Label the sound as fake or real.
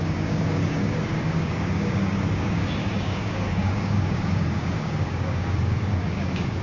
fake